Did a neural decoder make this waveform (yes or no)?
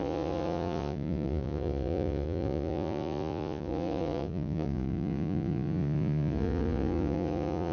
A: yes